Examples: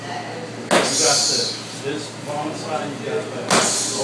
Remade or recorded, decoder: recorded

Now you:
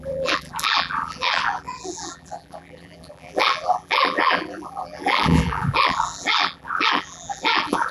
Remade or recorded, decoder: remade, vocoder, BigVGAN v2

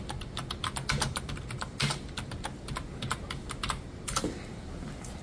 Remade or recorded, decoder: recorded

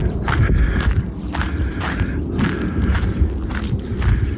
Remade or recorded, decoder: recorded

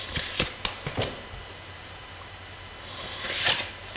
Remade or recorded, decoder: remade, vocoder, BigVGAN v2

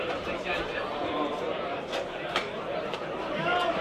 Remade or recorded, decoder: remade, vocoder, BigVGAN v2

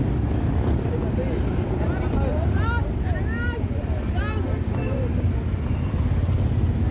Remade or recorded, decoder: recorded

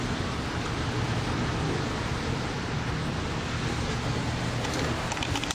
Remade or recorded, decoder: recorded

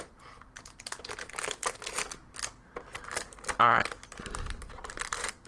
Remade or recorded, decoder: recorded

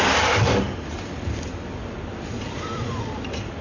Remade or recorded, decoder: remade, vocoder, BigVGAN v2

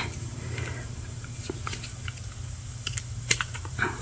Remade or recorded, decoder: remade, vocoder, BigVGAN v2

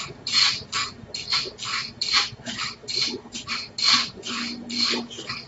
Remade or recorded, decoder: remade, vocoder, BigVGAN v2